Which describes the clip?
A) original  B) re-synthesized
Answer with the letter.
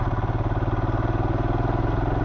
A